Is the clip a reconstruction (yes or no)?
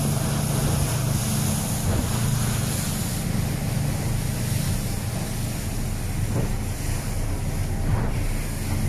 no